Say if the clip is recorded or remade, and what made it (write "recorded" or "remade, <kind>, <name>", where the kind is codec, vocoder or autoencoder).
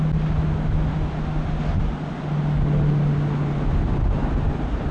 recorded